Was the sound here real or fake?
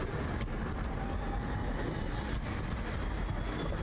real